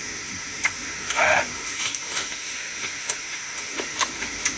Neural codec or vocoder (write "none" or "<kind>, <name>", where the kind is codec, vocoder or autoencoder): autoencoder, DAC-VAE